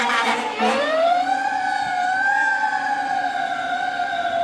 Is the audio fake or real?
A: fake